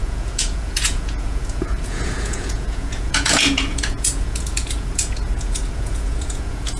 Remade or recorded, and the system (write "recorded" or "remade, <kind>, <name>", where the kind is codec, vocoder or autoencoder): remade, vocoder, Vocos